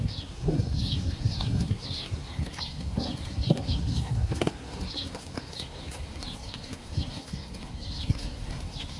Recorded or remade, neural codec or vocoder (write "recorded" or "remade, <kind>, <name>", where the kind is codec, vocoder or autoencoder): remade, codec, SNAC